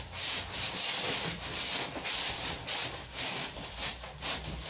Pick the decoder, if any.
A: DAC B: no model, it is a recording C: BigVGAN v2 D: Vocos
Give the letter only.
B